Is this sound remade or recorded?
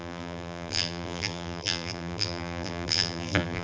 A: remade